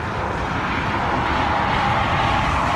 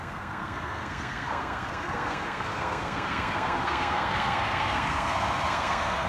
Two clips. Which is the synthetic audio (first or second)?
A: second